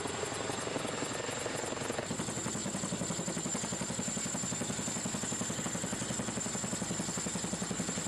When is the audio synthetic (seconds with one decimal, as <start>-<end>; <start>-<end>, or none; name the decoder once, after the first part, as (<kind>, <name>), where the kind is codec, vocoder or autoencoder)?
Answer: none